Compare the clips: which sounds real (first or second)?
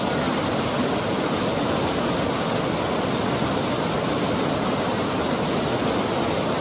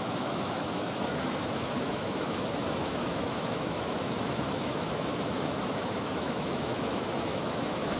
first